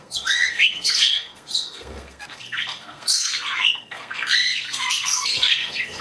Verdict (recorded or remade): remade